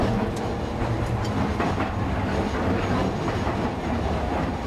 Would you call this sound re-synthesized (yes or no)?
no